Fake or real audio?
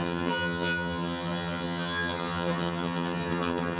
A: fake